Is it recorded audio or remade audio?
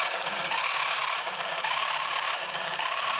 remade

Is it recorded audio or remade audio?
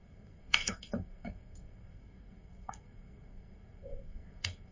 remade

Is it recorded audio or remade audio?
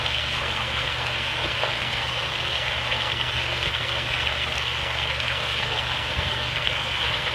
remade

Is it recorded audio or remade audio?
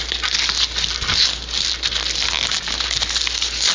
recorded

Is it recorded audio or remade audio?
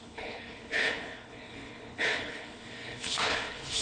remade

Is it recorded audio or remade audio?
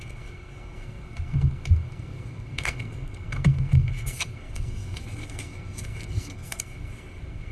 remade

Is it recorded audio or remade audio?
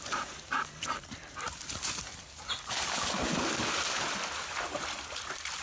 remade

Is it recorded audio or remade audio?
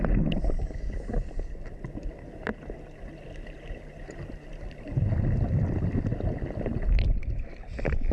recorded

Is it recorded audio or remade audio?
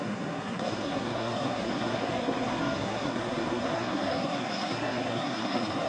remade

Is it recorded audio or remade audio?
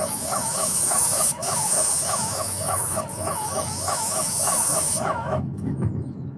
remade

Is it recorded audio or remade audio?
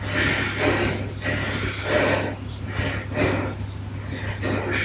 recorded